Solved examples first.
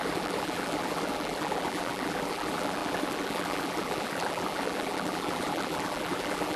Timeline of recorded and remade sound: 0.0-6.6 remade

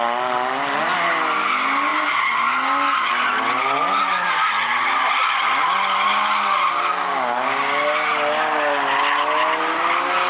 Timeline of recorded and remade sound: 0.0-10.3 recorded

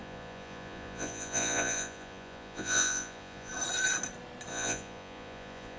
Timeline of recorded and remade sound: 0.0-3.5 remade; 3.5-4.5 recorded; 4.5-5.8 remade

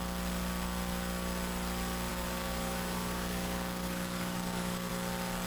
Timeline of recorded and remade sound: 0.0-2.1 recorded; 2.1-4.9 remade; 4.9-5.5 recorded

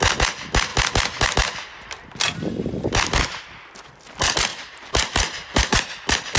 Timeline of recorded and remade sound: 0.0-4.5 recorded; 4.5-6.0 remade; 6.0-6.4 recorded